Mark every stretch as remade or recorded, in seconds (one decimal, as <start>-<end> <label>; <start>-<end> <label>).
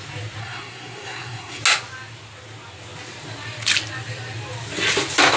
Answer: 0.0-0.4 recorded; 0.4-1.6 remade; 1.6-5.4 recorded